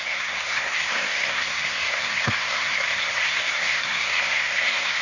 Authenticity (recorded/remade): remade